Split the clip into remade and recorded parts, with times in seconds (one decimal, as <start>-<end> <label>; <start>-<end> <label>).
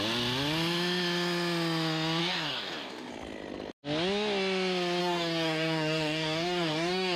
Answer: 0.0-2.2 recorded; 2.2-3.1 remade; 3.1-5.0 recorded; 5.0-7.2 remade